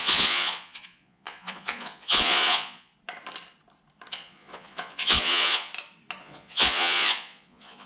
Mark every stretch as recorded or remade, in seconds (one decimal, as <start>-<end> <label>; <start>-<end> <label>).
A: 0.0-2.9 remade; 2.9-4.1 recorded; 4.1-5.7 remade; 5.7-6.2 recorded; 6.2-7.9 remade